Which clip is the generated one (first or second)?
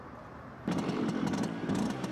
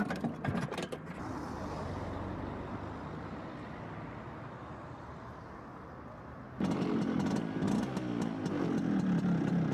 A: first